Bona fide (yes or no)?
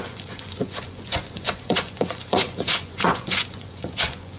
no